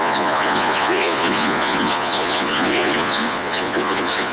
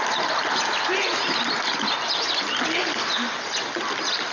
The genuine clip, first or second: second